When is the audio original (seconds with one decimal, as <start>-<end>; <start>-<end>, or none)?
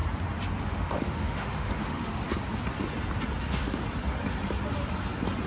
0.0-0.6; 2.2-3.4; 3.8-5.5